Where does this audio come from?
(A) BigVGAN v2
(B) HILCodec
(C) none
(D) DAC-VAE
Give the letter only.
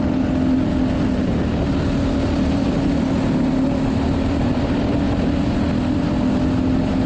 C